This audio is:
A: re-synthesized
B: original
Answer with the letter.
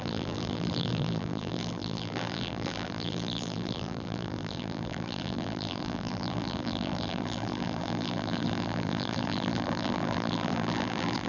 A